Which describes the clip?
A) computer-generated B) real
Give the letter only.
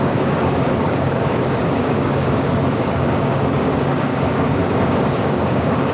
A